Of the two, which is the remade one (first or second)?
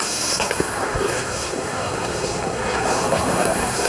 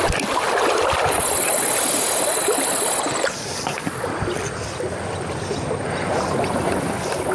first